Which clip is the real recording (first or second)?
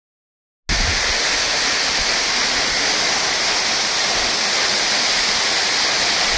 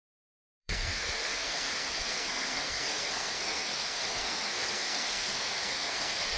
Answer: first